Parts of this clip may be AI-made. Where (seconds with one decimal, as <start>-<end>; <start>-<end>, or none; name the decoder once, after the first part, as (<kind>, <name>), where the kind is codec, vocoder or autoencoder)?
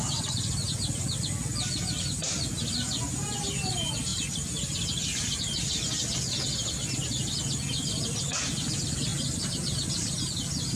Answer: 0.0-0.5 (vocoder, BigVGAN v2)